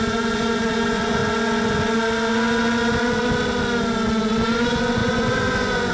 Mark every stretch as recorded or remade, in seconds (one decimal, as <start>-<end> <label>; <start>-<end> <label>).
0.0-1.2 remade; 1.2-4.6 recorded; 4.6-5.9 remade